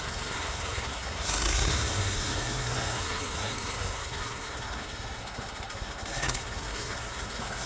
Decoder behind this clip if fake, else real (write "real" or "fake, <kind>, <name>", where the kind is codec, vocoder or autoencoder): fake, codec, SNAC